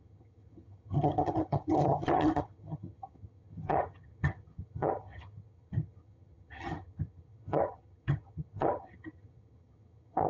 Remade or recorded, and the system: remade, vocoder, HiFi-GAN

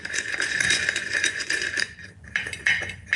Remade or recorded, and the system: remade, vocoder, Vocos